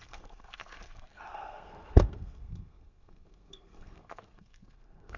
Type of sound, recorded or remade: remade